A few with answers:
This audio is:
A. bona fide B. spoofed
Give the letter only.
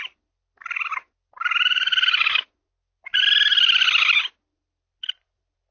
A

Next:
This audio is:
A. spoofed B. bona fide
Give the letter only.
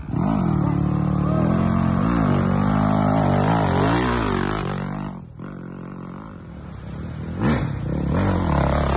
B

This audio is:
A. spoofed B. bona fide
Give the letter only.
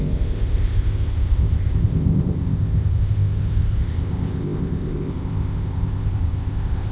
A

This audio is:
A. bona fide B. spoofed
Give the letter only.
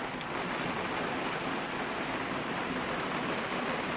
A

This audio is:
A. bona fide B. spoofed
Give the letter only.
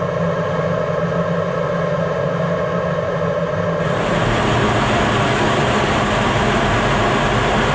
A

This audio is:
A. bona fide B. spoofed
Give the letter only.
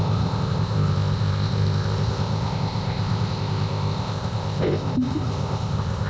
B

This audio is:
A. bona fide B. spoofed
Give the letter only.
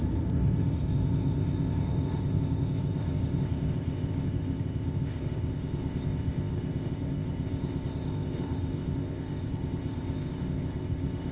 B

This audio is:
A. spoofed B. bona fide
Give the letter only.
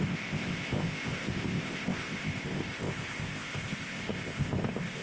A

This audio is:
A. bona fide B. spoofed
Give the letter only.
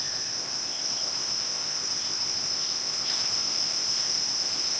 B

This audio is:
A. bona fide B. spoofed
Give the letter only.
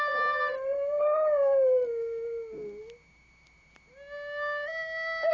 A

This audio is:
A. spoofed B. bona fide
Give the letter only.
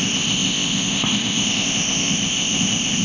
A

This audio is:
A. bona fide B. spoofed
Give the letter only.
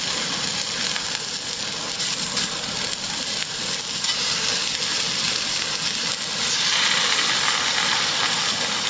A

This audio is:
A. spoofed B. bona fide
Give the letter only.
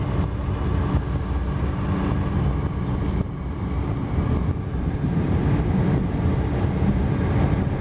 B